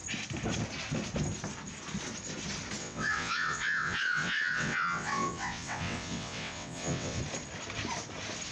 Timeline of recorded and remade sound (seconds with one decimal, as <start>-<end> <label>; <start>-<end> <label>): 0.0-2.8 recorded; 2.8-7.2 remade; 7.2-8.5 recorded